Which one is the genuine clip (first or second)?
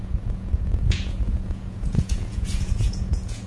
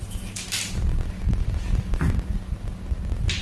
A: second